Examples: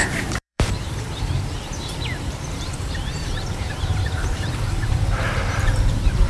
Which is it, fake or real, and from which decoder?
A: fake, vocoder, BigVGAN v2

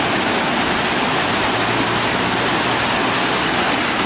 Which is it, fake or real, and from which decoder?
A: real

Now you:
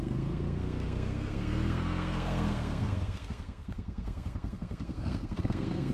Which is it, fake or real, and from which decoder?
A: fake, codec, SNAC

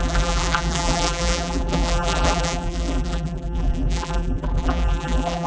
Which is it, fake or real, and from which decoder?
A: fake, vocoder, BigVGAN v2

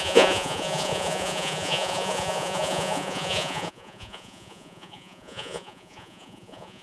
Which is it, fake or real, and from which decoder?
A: fake, vocoder, Vocos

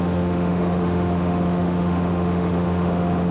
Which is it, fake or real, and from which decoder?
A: fake, autoencoder, DAC-VAE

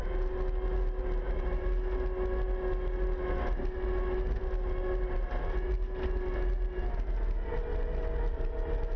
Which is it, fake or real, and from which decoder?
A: real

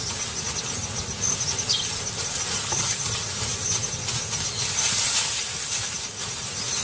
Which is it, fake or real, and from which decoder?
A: real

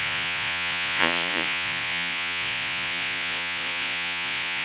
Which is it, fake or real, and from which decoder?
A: fake, vocoder, Vocos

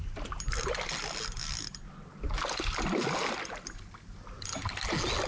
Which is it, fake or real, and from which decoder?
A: real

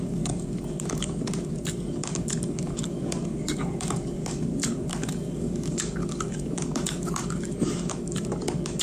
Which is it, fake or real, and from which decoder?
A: fake, codec, DAC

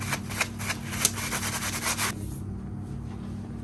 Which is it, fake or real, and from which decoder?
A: real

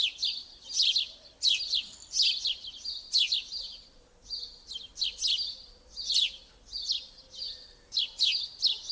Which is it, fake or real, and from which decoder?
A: real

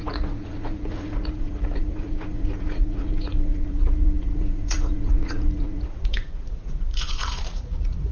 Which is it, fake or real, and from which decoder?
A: fake, vocoder, Vocos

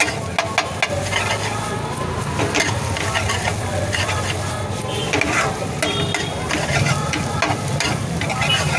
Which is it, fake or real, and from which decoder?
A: real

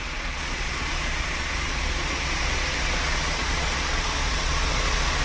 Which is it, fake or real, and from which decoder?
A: fake, vocoder, Vocos